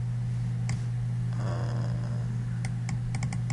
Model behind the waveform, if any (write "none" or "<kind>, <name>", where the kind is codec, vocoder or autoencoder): none